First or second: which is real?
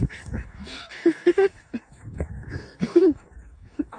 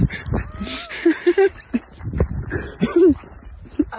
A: second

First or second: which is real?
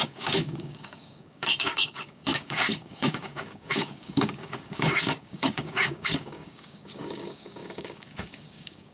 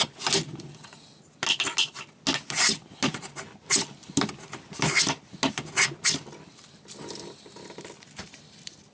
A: second